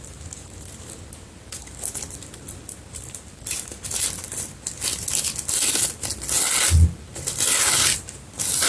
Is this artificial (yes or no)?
no